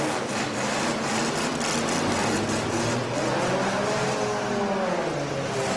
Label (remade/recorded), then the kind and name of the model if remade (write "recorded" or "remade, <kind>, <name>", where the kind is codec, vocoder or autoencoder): recorded